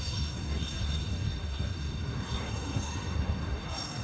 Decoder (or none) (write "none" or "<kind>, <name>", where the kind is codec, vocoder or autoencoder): codec, SNAC